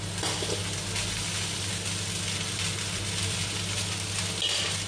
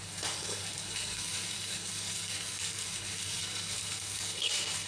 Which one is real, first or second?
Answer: first